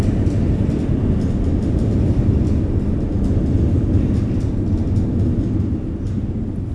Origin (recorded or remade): recorded